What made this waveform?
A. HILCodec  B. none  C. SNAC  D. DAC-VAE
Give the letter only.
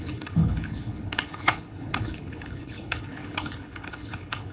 A